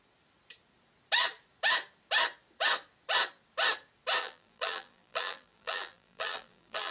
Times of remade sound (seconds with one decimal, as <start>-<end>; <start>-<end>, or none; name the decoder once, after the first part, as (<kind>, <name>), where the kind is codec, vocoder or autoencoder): 4.2-6.9 (vocoder, BigVGAN v2)